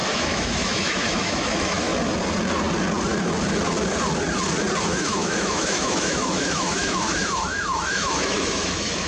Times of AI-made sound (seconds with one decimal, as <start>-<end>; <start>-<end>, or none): 0.0-1.9; 4.8-9.1

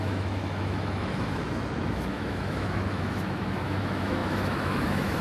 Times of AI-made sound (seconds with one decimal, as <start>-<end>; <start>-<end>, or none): 0.0-5.2

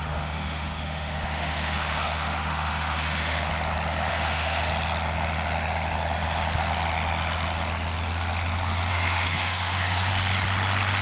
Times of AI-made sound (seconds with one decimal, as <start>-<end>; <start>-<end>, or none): 0.0-3.5; 4.1-4.7; 8.9-10.1

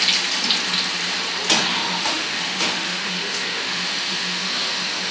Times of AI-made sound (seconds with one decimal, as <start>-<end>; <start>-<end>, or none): 1.8-5.1

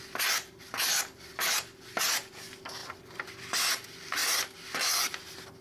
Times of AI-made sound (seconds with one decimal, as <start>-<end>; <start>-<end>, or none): none

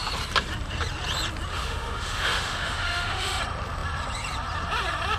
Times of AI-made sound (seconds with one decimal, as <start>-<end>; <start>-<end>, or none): 1.5-3.4